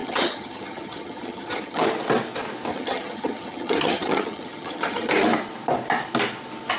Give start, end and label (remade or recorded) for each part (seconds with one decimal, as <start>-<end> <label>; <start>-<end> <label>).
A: 0.0-1.8 remade; 1.8-2.7 recorded; 2.7-5.1 remade; 5.1-6.8 recorded